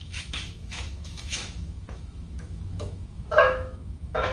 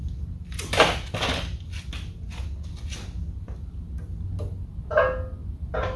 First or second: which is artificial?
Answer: first